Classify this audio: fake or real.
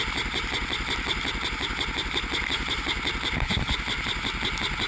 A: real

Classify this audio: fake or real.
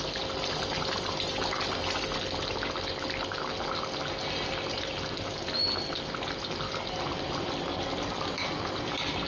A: real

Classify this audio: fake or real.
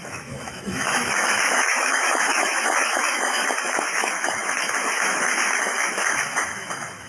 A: fake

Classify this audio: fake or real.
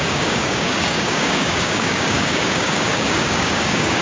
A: fake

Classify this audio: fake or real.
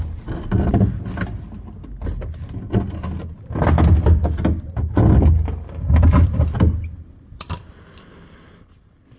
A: real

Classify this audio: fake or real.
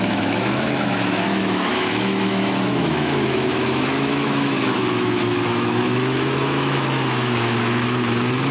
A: fake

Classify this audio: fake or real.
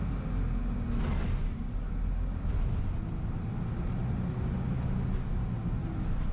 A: real